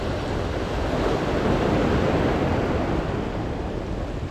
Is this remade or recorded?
recorded